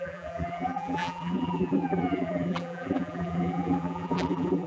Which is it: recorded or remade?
remade